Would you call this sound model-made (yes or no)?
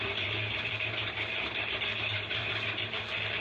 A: yes